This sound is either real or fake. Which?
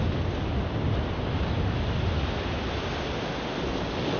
real